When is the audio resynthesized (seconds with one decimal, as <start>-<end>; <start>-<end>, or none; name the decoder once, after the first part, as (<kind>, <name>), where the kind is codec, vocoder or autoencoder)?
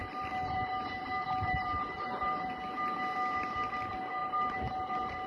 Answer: 0.0-2.5 (vocoder, BigVGAN v2); 4.2-5.3